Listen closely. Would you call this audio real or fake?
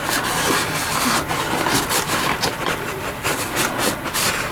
real